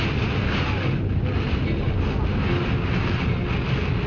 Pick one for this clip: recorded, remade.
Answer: recorded